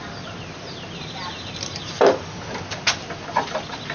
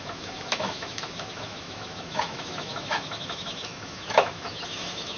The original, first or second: first